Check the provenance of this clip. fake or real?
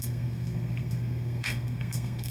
fake